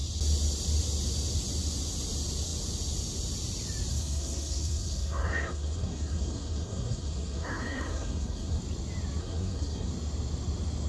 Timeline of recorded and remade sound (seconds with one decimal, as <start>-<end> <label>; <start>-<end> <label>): 0.0-3.9 recorded; 3.9-8.6 remade; 8.6-9.2 recorded; 9.2-9.9 remade; 9.9-10.9 recorded